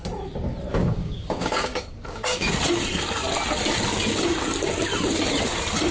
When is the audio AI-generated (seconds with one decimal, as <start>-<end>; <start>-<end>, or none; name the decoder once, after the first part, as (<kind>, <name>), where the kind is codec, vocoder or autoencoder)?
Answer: 0.8-2.5 (codec, DAC)